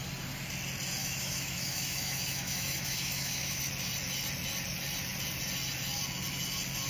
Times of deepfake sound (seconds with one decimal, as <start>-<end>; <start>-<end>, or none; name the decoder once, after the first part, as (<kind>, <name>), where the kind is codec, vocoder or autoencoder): 1.0-3.6 (autoencoder, DAC-VAE)